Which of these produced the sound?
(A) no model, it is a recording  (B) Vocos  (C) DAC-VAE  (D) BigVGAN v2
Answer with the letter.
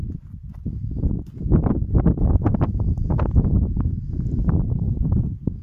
A